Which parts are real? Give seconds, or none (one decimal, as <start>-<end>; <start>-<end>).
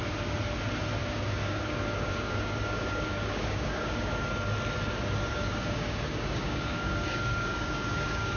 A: 0.0-1.0; 4.1-5.3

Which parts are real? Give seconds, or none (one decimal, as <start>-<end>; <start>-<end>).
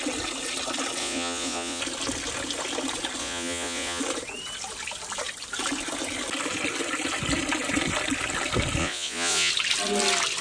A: 0.0-1.0; 1.8-3.2; 4.0-8.8; 9.5-10.4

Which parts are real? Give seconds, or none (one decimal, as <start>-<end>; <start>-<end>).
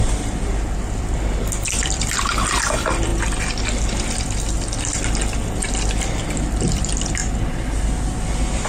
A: 3.1-6.4; 7.2-8.7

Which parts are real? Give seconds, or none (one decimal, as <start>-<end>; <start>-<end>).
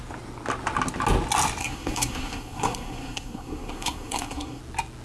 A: 0.0-1.6; 4.6-5.0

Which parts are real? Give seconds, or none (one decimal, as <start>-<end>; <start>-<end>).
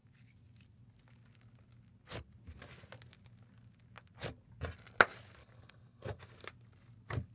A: 0.0-5.4; 6.2-7.3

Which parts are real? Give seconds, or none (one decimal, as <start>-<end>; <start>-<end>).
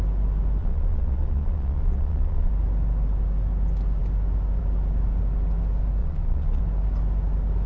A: 0.0-0.6; 2.5-6.0; 6.6-7.7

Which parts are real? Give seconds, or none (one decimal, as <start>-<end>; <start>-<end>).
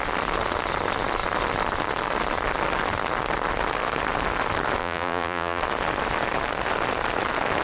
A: 0.0-4.8; 5.6-7.6